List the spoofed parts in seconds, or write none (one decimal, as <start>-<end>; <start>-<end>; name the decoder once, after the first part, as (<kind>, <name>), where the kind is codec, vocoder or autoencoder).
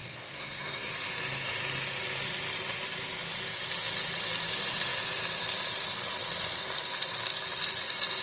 0.0-0.9 (codec, SNAC)